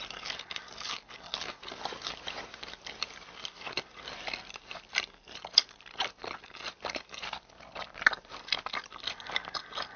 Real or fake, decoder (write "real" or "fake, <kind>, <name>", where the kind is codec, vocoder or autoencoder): real